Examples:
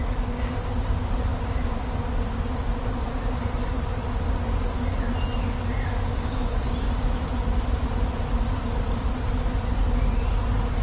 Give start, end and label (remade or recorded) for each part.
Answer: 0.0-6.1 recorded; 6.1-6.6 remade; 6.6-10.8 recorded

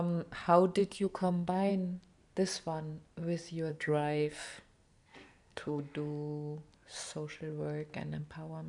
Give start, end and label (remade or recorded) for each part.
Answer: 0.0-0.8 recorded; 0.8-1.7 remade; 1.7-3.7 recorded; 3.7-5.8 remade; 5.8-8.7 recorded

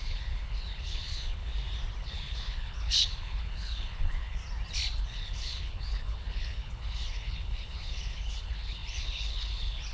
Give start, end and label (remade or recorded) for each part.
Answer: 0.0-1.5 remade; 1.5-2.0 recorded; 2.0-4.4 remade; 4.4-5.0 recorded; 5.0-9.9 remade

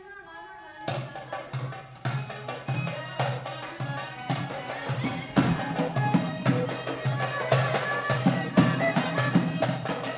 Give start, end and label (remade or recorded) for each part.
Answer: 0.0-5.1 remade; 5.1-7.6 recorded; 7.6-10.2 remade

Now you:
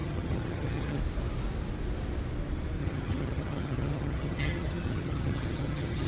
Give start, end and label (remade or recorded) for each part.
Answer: 0.0-1.0 remade; 1.0-2.8 recorded; 2.8-6.1 remade